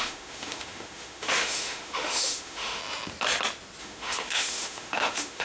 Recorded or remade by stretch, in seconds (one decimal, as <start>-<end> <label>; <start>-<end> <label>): 0.0-2.8 remade; 2.8-3.8 recorded; 3.8-5.4 remade